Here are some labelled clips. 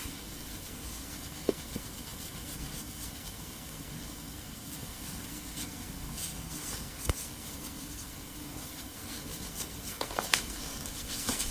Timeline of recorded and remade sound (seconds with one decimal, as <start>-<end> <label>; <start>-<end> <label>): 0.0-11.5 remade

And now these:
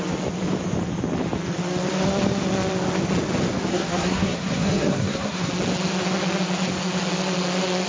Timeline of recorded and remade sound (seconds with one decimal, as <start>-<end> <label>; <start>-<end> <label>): 0.0-3.7 recorded; 3.7-5.5 remade; 5.5-7.9 recorded

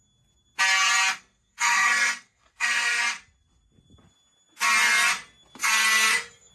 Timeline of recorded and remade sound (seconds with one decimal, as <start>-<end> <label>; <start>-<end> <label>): 0.0-1.2 recorded; 1.2-3.0 remade; 3.0-5.6 recorded; 5.6-6.5 remade

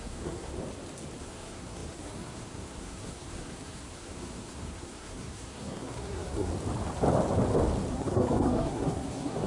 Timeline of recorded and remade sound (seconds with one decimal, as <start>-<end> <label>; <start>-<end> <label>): 0.0-0.5 remade; 0.5-1.2 recorded; 1.2-6.5 remade; 6.5-7.9 recorded; 7.9-9.5 remade

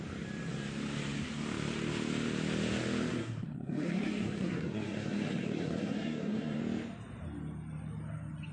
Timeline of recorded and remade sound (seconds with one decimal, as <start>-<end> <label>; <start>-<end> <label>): 0.0-3.1 recorded; 3.1-6.6 remade; 6.6-8.5 recorded

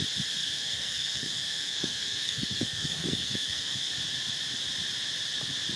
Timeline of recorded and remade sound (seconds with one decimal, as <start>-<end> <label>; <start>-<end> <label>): 0.0-0.4 recorded; 0.4-3.9 remade; 3.9-5.8 recorded

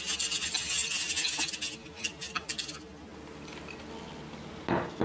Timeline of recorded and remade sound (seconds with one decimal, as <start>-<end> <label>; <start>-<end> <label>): 0.0-5.0 recorded